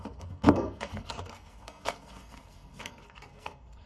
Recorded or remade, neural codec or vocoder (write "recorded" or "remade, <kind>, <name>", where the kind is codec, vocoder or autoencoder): remade, codec, SNAC